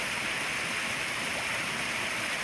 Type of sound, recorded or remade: recorded